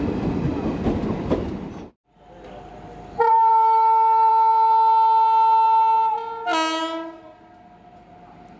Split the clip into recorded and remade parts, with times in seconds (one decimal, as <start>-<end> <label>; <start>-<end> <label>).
0.0-3.5 recorded; 3.5-4.3 remade; 4.3-8.6 recorded